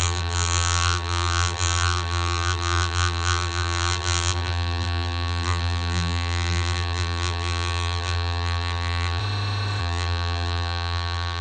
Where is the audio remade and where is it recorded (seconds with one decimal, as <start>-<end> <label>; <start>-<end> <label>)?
0.0-9.2 remade; 9.2-9.8 recorded; 9.8-11.4 remade